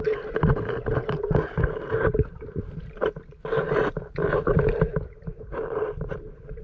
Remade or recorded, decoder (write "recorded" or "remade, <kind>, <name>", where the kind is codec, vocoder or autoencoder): remade, vocoder, BigVGAN v2